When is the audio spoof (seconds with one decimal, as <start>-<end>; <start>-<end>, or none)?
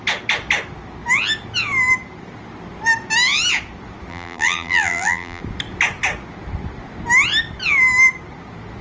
4.1-5.4